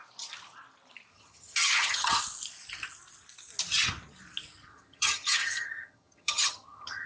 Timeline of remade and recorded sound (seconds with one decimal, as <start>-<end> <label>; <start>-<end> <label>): 0.0-1.1 recorded; 1.1-2.2 remade; 2.2-4.7 recorded; 4.7-7.1 remade